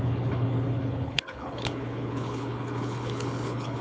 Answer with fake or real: fake